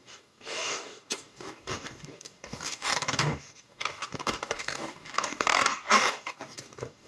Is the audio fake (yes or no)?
yes